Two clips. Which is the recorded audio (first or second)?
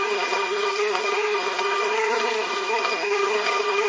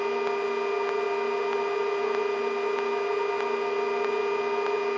second